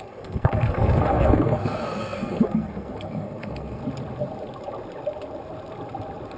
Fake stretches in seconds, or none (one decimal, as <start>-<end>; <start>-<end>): 0.0-3.8